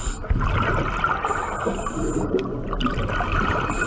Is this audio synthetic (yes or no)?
no